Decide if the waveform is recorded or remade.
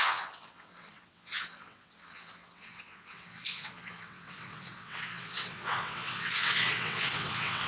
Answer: remade